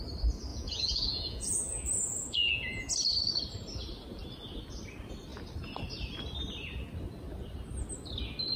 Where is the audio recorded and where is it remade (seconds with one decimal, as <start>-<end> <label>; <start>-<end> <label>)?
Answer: 0.0-0.5 recorded; 0.5-2.9 remade; 2.9-8.6 recorded